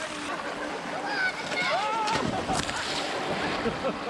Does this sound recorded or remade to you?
remade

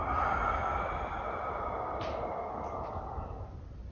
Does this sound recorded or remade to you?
recorded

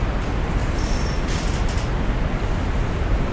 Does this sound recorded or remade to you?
recorded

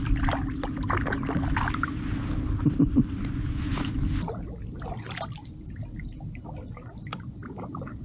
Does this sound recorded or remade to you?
recorded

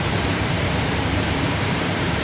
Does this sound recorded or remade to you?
remade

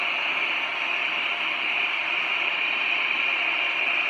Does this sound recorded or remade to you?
remade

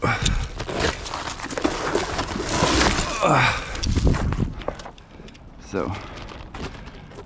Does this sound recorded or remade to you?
recorded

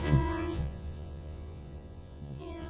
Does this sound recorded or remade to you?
remade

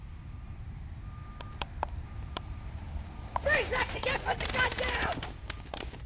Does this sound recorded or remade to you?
remade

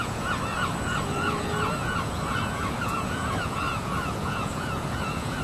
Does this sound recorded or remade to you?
remade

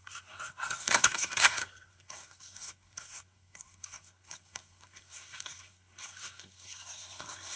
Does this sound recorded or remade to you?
remade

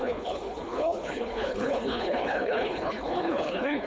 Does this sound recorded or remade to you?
remade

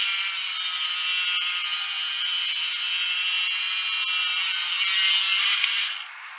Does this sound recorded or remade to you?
recorded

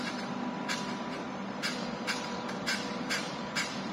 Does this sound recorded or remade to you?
remade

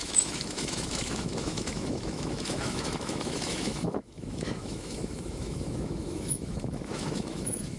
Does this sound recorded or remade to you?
remade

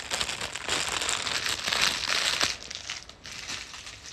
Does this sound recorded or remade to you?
recorded